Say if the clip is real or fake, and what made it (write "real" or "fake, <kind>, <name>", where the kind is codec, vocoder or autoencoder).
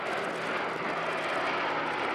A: real